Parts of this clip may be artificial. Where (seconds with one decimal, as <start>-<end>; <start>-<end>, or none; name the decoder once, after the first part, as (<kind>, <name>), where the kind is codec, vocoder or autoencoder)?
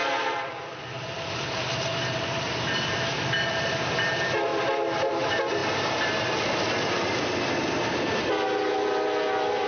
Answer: 0.0-4.5 (vocoder, BigVGAN v2); 5.1-9.7